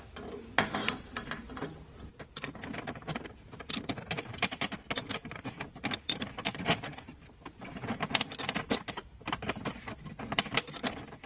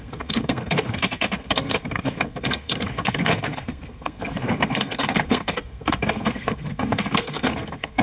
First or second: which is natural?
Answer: first